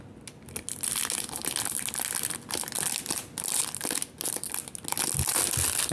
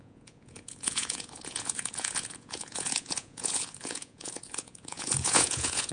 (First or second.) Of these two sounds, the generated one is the second